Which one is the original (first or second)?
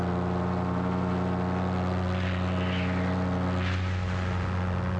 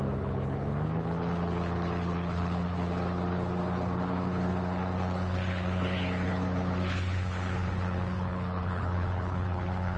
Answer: first